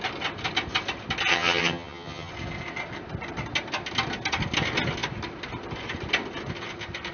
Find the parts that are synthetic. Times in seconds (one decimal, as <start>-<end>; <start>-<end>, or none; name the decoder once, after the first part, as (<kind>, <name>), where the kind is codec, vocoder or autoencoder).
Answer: 1.3-2.3 (vocoder, HiFi-GAN)